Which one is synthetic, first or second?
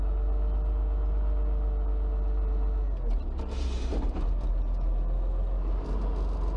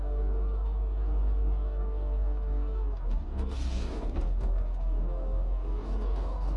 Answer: second